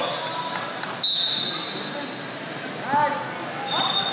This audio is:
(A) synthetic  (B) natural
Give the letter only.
B